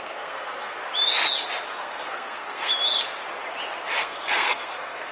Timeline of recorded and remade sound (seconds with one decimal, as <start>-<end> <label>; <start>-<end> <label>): 0.0-0.8 remade; 0.8-1.7 recorded; 1.7-2.7 remade; 2.7-4.0 recorded; 4.0-5.1 remade